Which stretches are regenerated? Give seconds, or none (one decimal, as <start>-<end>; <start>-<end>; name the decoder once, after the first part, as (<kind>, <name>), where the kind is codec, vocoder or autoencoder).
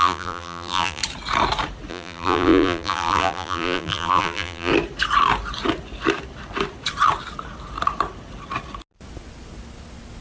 0.0-1.0 (vocoder, BigVGAN v2); 1.9-4.7